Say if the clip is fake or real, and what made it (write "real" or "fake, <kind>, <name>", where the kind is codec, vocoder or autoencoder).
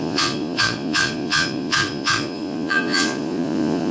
fake, vocoder, Vocos